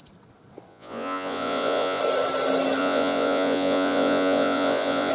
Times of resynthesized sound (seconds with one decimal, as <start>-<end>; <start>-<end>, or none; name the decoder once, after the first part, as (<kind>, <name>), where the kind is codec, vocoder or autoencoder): 0.7-2.0 (vocoder, Vocos); 2.8-5.1